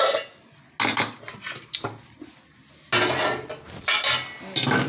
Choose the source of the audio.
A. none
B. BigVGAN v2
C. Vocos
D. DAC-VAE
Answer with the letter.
A